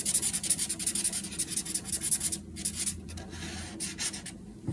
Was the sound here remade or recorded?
recorded